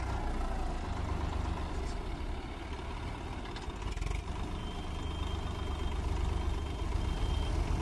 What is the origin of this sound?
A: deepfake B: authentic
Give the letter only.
B